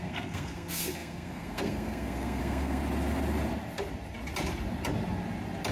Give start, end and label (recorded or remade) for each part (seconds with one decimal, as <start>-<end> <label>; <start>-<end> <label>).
0.0-2.8 remade; 2.8-5.7 recorded